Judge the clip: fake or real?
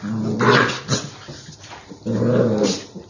real